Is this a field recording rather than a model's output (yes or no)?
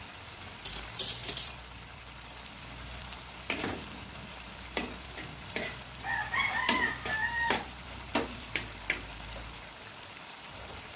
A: no